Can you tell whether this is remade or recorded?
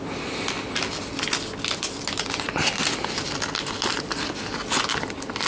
recorded